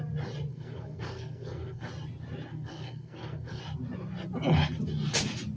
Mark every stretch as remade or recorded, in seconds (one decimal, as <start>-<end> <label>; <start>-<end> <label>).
0.0-0.5 recorded; 0.5-1.9 remade; 1.9-2.5 recorded; 2.5-3.6 remade; 3.6-5.6 recorded